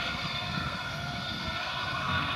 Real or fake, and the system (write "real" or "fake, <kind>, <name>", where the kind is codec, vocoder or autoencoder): fake, codec, SNAC